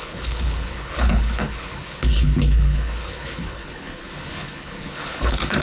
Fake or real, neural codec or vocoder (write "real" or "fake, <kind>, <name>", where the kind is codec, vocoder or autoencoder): fake, codec, HILCodec